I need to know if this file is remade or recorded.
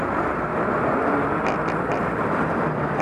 remade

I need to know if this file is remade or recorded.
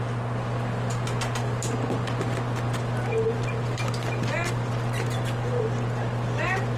recorded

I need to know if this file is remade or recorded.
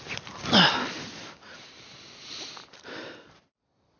recorded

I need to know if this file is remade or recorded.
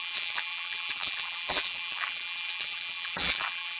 remade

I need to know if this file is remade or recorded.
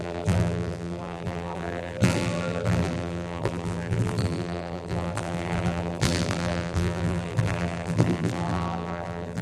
remade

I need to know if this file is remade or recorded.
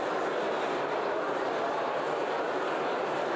remade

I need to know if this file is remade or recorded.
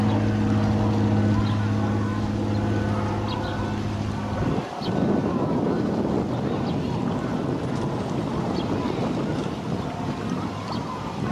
recorded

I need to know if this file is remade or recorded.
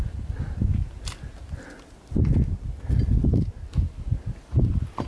recorded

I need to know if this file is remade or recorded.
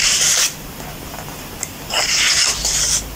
recorded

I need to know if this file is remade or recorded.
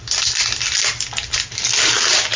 recorded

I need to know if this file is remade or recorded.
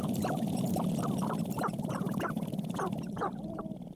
remade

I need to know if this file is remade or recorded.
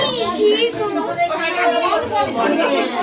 recorded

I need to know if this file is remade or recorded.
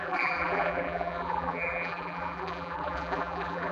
remade